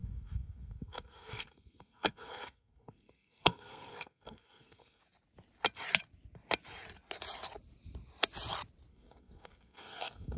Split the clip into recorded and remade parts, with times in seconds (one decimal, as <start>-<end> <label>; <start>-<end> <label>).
0.0-5.0 remade; 5.0-8.9 recorded; 8.9-10.4 remade